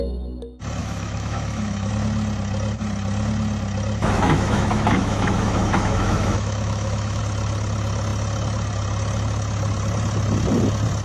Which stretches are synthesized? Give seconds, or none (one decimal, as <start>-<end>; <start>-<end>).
0.8-1.9; 4.0-7.2